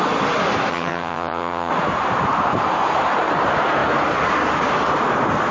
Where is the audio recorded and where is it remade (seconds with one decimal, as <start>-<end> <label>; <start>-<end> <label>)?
0.0-0.7 recorded; 0.7-1.7 remade; 1.7-5.5 recorded